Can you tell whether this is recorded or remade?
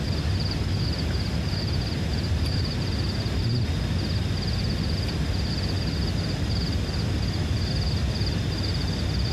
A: recorded